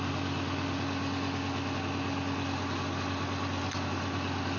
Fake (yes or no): no